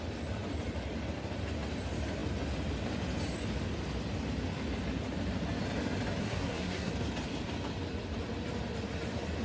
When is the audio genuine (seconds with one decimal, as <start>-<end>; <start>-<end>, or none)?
0.0-6.2; 6.9-9.4